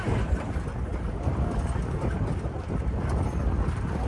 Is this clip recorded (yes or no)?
yes